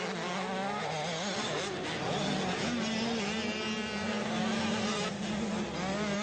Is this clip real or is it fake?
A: real